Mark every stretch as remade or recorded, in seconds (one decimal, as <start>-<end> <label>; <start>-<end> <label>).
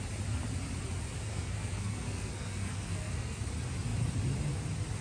0.0-1.3 recorded; 1.3-3.5 remade; 3.5-5.0 recorded